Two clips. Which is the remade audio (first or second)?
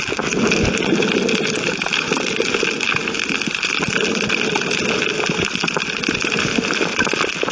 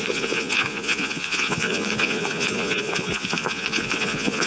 second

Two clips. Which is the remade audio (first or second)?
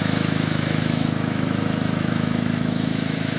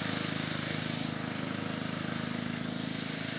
first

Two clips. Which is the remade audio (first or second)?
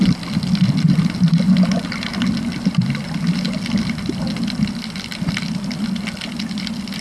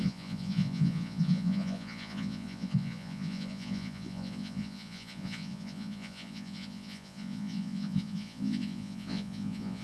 second